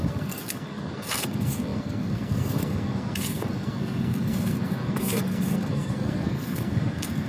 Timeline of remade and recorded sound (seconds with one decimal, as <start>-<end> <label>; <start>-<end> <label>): 0.0-7.3 remade